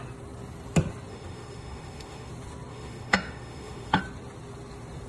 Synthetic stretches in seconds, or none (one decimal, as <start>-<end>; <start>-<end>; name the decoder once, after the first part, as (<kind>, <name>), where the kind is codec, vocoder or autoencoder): 1.1-2.3 (autoencoder, DAC-VAE); 2.7-4.0

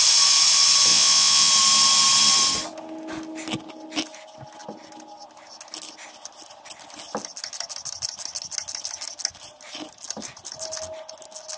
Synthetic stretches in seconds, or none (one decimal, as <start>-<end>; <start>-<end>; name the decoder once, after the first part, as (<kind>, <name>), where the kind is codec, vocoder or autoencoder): 0.9-1.5 (vocoder, Vocos)